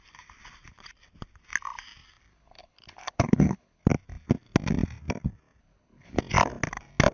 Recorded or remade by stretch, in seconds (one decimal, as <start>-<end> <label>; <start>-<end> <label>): 0.0-2.3 recorded; 2.3-3.8 remade; 3.8-5.6 recorded; 5.6-6.2 remade; 6.2-7.1 recorded